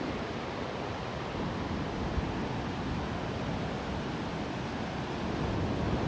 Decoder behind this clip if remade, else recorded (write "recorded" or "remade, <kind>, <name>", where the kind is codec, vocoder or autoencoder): recorded